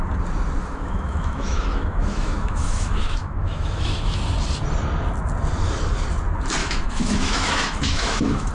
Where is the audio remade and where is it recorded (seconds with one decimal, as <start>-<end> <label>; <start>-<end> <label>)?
0.0-0.6 recorded; 0.6-4.2 remade; 4.2-6.6 recorded; 6.6-8.5 remade